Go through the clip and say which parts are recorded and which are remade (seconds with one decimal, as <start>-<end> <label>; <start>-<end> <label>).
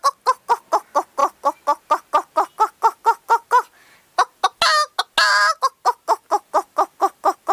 0.0-7.5 recorded